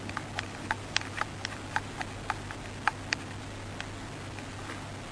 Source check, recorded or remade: recorded